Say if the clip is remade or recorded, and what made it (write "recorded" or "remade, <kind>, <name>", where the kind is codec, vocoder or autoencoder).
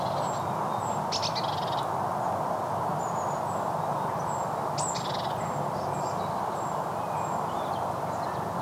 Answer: recorded